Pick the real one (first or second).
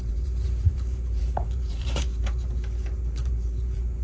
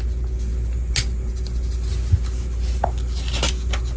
second